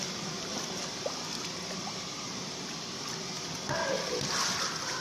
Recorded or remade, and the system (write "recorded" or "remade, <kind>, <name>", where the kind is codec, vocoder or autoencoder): recorded